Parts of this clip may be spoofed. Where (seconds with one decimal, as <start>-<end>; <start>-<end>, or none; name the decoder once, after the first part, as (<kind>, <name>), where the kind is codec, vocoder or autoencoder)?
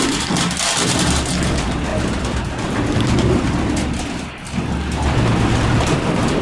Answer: none